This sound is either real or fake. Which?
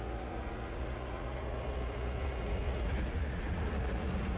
fake